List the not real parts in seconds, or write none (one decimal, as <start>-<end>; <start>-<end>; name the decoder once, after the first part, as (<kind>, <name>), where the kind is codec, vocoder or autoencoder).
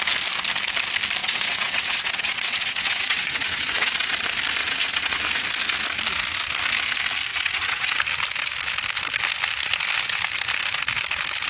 1.2-4.1 (vocoder, WaveNeXt); 4.6-5.2; 7.3-8.0